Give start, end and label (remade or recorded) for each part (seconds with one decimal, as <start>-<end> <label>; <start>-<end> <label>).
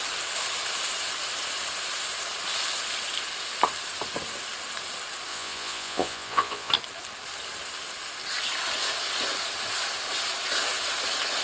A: 0.0-5.3 recorded; 5.3-6.7 remade; 6.7-11.4 recorded